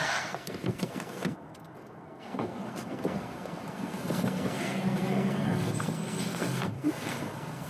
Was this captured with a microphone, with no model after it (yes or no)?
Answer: no